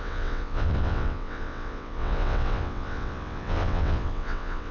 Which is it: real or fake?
fake